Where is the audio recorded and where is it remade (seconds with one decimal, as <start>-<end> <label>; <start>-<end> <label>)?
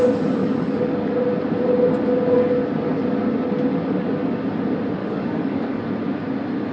0.0-0.4 recorded; 0.4-1.1 remade; 1.1-3.7 recorded; 3.7-4.3 remade; 4.3-5.0 recorded; 5.0-5.9 remade; 5.9-6.7 recorded